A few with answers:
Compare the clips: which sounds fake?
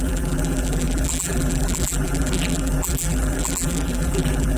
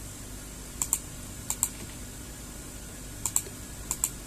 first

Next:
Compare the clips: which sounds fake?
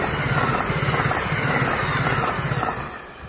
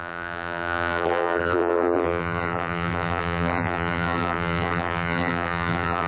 second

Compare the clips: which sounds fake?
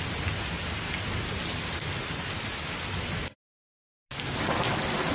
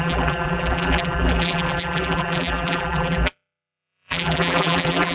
second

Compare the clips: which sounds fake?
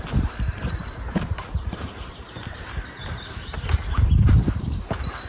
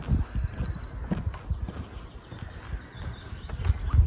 first